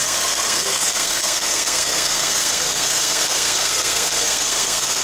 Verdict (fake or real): fake